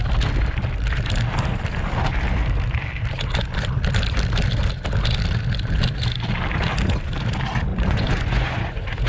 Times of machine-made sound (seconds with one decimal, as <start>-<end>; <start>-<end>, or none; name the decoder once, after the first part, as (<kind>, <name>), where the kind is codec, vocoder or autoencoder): 7.7-9.1 (vocoder, Vocos)